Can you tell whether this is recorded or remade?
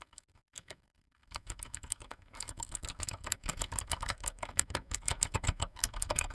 remade